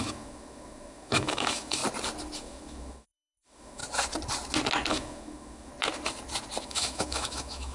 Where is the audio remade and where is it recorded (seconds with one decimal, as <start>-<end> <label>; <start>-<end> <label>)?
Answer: 0.0-1.8 remade; 1.8-2.4 recorded; 2.4-3.8 remade; 3.8-4.9 recorded; 4.9-5.7 remade; 5.7-6.6 recorded; 6.6-7.7 remade